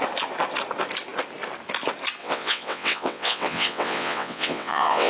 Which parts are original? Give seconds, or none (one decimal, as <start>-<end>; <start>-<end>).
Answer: 0.0-2.2